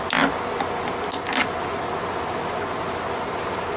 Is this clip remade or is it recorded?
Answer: recorded